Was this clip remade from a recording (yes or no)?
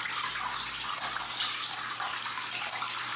no